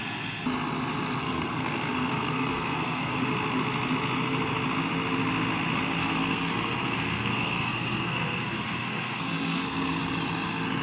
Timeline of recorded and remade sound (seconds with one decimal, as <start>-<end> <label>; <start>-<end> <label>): 0.0-1.2 recorded; 1.2-3.2 remade; 3.2-6.0 recorded; 6.0-10.0 remade; 10.0-10.8 recorded